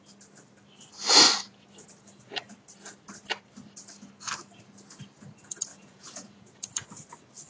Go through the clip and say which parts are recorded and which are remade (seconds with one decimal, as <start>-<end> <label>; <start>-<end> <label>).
0.0-5.7 recorded; 5.7-6.8 remade; 6.8-7.5 recorded

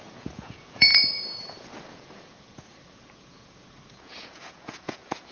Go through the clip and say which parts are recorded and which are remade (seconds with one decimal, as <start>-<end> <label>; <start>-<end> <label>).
0.0-5.3 remade